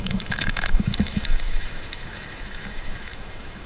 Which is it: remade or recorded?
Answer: remade